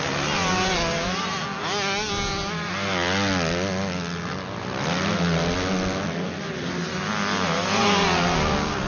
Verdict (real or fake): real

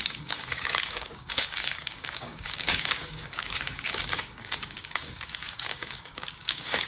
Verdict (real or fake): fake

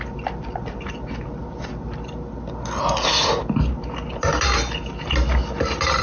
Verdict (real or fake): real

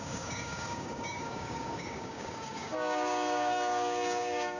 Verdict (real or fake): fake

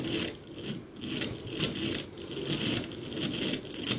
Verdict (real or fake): real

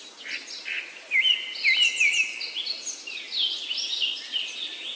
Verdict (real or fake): real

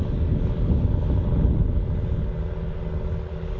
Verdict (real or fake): real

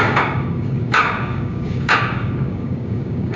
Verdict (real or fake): fake